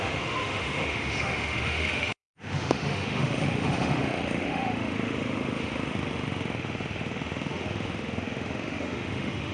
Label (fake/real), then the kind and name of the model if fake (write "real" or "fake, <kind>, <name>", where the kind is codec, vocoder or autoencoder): fake, autoencoder, DAC-VAE